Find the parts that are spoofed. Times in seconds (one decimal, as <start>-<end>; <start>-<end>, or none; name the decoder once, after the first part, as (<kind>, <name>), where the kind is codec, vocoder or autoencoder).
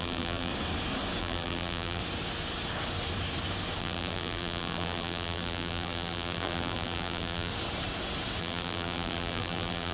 0.0-0.5 (vocoder, BigVGAN v2); 1.2-2.0; 3.8-7.5; 8.4-9.9